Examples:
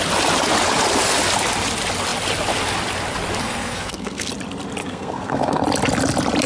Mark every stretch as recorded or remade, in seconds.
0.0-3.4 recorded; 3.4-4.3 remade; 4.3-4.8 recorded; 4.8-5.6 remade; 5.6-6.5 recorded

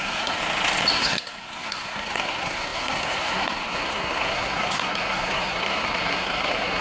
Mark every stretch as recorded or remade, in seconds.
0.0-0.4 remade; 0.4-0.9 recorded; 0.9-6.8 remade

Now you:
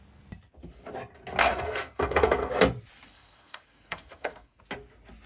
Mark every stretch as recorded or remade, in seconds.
0.0-1.4 recorded; 1.4-2.5 remade; 2.5-3.1 recorded; 3.1-4.6 remade; 4.6-5.3 recorded

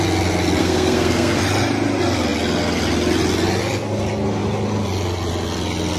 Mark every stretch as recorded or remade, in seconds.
0.0-0.6 recorded; 0.6-1.4 remade; 1.4-6.0 recorded

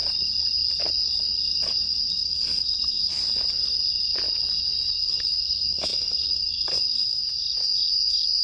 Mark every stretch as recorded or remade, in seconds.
0.0-2.1 recorded; 2.1-3.1 remade; 3.1-4.9 recorded; 4.9-7.2 remade; 7.2-8.4 recorded